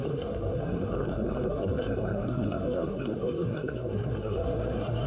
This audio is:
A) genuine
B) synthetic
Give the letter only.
B